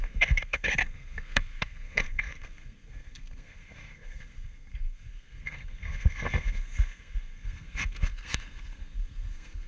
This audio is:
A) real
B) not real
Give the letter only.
B